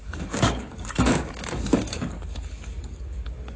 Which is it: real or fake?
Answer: fake